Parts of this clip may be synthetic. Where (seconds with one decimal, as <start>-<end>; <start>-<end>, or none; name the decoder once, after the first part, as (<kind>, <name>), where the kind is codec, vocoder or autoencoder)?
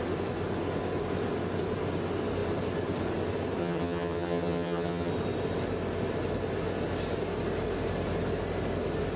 3.6-5.1 (vocoder, HiFi-GAN)